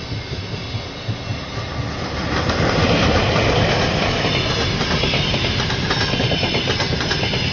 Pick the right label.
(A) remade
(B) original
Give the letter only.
B